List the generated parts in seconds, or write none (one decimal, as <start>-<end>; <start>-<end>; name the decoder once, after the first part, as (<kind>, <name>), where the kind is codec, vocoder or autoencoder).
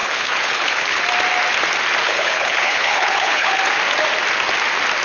0.0-1.0 (codec, HILCodec); 2.0-3.6